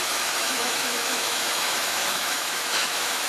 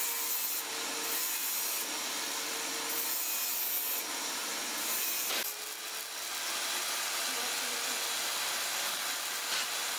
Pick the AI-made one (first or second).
first